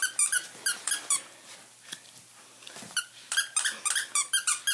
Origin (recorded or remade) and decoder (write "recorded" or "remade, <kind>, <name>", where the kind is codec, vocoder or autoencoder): remade, vocoder, BigVGAN v2